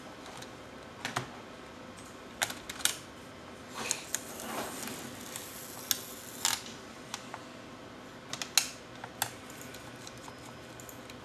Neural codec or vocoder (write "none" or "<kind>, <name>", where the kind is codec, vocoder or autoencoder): none